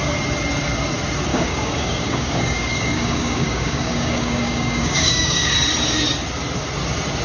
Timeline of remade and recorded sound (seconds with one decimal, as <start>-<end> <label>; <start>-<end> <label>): 0.0-1.3 recorded; 1.3-5.5 remade; 5.5-7.2 recorded